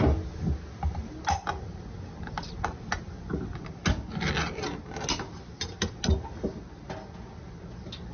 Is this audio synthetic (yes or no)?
no